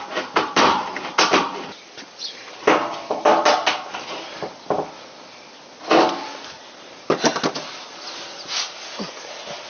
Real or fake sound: real